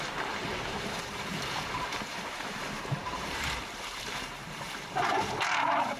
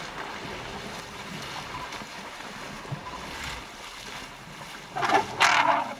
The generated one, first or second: first